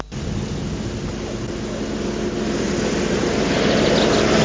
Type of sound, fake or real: real